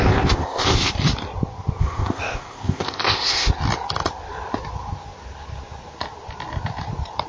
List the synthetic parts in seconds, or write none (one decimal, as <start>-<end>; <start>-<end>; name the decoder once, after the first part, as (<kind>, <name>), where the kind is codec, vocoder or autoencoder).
0.0-0.9 (codec, ZipCodec); 1.8-3.5